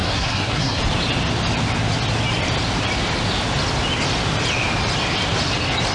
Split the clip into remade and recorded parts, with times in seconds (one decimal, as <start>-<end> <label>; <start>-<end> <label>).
0.0-0.8 remade; 0.8-5.9 recorded